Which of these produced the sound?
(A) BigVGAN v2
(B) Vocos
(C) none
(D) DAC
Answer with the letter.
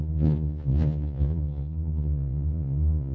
B